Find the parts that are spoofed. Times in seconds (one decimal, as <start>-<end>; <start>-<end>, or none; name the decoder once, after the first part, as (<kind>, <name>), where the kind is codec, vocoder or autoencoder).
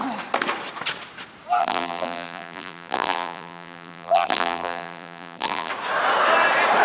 1.6-5.7 (vocoder, BigVGAN v2)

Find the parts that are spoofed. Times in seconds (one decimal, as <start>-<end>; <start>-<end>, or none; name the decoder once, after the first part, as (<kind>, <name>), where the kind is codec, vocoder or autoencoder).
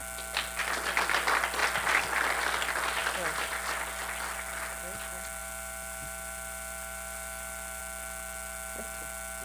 3.0-3.5 (vocoder, BigVGAN v2); 5.4-7.8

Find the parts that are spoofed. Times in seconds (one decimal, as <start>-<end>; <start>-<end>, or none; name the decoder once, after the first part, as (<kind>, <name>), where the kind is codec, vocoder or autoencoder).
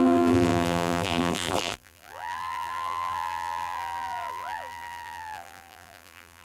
0.0-6.4 (vocoder, BigVGAN v2)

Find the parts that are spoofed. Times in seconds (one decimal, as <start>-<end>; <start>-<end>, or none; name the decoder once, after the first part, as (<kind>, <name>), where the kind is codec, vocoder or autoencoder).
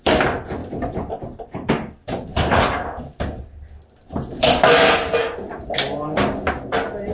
0.6-1.7 (vocoder, BigVGAN v2)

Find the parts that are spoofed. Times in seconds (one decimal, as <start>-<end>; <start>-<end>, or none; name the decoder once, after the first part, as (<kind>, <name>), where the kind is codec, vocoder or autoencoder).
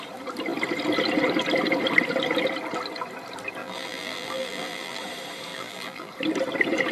3.6-5.0 (vocoder, BigVGAN v2); 5.5-6.1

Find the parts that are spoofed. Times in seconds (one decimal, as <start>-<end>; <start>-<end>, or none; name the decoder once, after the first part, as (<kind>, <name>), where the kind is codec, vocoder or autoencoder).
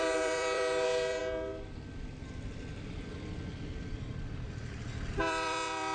0.0-1.2 (vocoder, BigVGAN v2); 3.8-5.9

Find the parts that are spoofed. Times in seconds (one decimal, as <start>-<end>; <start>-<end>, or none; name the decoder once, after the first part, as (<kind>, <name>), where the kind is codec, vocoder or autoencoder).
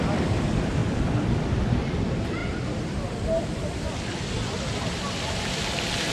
0.0-0.8 (vocoder, BigVGAN v2); 2.0-6.1